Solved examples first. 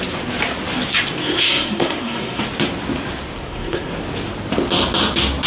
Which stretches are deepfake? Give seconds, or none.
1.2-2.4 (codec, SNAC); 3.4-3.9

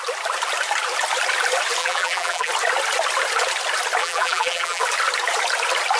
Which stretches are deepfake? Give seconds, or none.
1.8-2.5 (vocoder, BigVGAN v2); 4.0-4.8

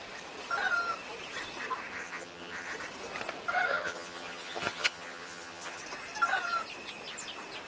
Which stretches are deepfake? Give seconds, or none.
1.9-2.7 (vocoder, HiFi-GAN); 3.7-5.8

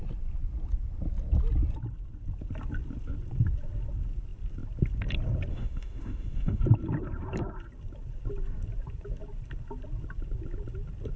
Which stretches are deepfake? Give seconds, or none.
5.5-6.6 (autoencoder, DAC-VAE)

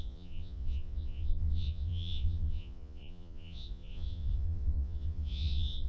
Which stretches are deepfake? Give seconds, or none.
0.0-5.9 (vocoder, Vocos)

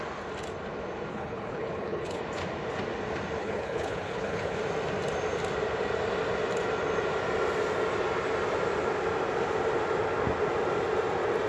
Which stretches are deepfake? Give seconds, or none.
1.1-2.2 (codec, HILCodec); 3.4-4.6

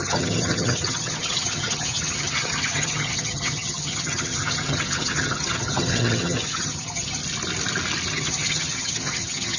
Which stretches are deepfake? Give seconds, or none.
0.0-7.2 (vocoder, HiFi-GAN); 8.1-9.6

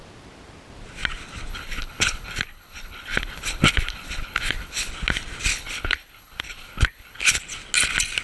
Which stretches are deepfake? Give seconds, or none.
1.5-4.9 (codec, HILCodec); 5.5-7.4